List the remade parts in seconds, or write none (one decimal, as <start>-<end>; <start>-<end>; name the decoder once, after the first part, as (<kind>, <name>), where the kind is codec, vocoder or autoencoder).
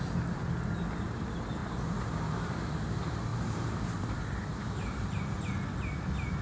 1.6-2.7 (vocoder, BigVGAN v2); 3.3-5.2